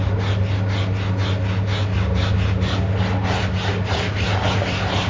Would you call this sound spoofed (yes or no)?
no